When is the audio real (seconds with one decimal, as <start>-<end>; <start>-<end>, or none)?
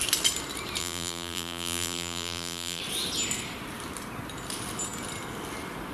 0.0-0.8; 2.8-5.9